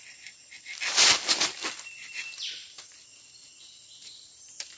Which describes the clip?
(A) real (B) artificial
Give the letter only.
A